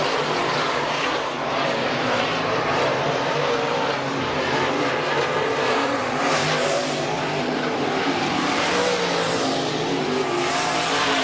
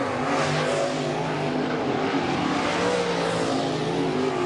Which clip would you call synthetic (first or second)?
first